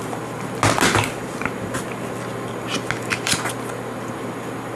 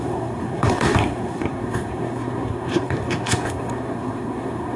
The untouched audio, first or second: first